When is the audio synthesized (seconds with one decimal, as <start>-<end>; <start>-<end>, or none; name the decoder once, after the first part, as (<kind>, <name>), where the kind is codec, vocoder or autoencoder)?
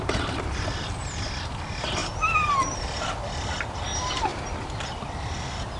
none